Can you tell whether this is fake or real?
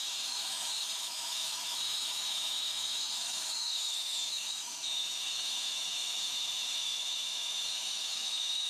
fake